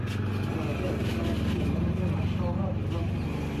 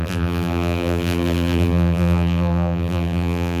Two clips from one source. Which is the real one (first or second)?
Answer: first